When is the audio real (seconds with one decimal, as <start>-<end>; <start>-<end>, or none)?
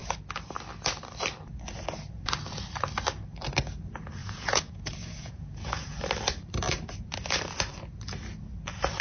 0.0-4.2; 6.0-9.0